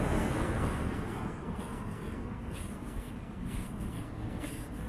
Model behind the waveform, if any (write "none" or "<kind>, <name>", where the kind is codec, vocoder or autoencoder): codec, SNAC